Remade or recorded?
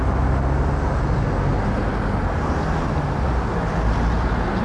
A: recorded